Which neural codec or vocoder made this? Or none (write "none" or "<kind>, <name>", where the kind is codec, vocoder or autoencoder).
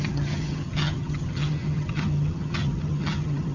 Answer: vocoder, HiFi-GAN